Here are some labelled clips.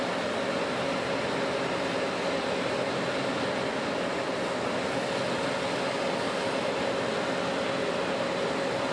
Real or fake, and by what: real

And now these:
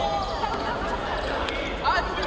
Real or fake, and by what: real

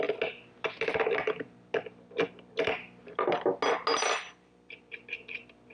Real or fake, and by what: real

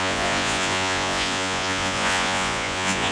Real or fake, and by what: fake, vocoder, Vocos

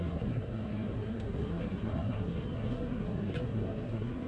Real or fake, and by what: fake, codec, SNAC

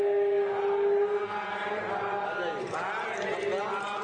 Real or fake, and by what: real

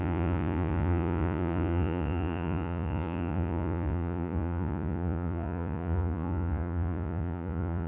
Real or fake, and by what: fake, vocoder, Vocos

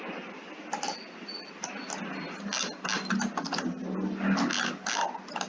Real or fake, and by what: real